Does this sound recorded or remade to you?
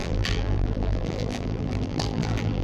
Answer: remade